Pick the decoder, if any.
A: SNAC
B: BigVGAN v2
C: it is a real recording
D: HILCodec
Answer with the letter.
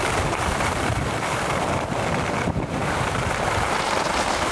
B